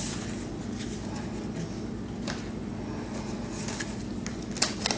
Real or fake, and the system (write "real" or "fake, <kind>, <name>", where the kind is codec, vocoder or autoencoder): real